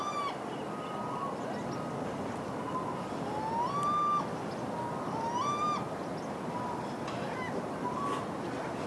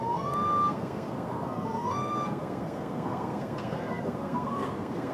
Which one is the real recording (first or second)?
first